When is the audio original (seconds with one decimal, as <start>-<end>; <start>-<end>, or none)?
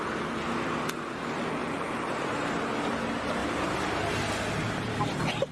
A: 0.0-5.5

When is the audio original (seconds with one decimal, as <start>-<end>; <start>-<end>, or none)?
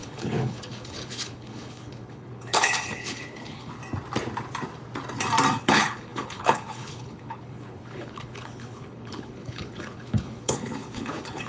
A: 3.8-5.6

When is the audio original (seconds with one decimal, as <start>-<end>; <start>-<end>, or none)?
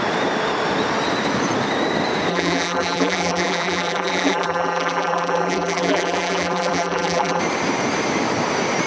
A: 0.0-2.3; 7.4-8.9